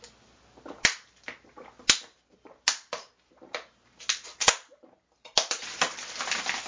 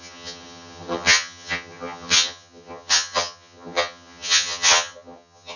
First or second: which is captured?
first